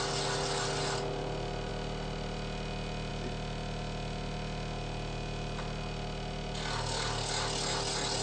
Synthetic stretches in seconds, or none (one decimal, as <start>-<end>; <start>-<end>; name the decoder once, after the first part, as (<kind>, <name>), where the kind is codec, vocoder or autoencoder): none